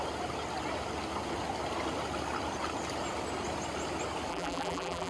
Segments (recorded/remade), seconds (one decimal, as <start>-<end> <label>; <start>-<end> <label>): 0.0-4.3 recorded; 4.3-5.1 remade